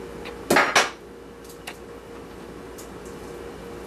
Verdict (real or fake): real